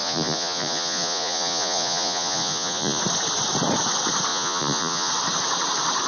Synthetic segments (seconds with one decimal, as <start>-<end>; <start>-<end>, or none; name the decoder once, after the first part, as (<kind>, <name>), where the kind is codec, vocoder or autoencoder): 0.0-3.0 (vocoder, Vocos); 4.3-5.1